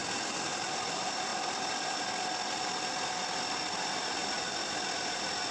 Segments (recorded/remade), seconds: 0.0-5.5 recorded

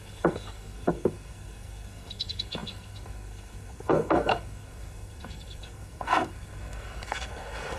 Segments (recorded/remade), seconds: 0.0-7.8 remade

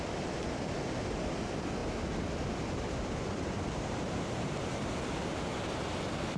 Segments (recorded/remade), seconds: 0.0-6.4 recorded